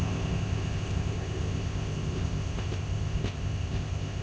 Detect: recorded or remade remade